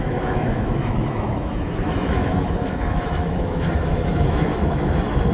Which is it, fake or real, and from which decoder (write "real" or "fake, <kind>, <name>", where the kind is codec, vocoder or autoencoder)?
fake, autoencoder, DAC-VAE